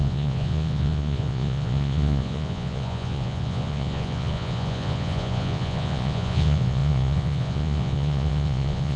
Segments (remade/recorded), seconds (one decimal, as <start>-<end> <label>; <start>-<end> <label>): 0.0-9.0 remade